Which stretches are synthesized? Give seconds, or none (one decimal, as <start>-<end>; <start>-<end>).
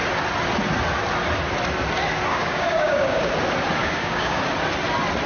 2.3-3.3; 3.8-4.4